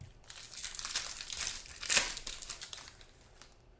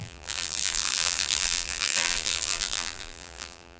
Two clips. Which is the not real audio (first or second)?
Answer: second